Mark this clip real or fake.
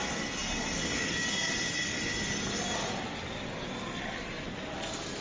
real